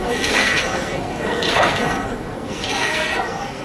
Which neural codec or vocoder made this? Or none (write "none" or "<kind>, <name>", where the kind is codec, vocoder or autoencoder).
codec, SNAC